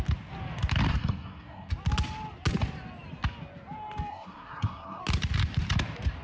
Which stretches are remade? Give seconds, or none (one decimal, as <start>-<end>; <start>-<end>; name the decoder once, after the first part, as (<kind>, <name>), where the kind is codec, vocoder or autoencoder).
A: 0.9-1.7 (codec, SNAC); 4.1-5.0